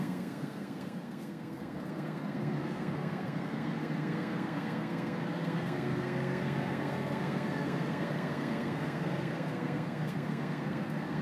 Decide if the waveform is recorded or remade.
remade